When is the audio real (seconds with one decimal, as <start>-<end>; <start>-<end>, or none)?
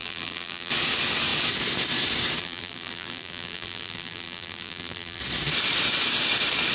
0.7-2.4; 5.2-6.7